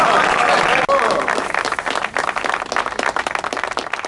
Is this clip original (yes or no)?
yes